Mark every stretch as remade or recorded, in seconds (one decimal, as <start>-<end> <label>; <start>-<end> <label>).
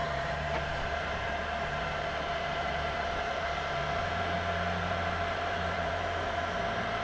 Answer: 0.0-4.2 remade; 4.2-4.8 recorded; 4.8-6.4 remade; 6.4-7.0 recorded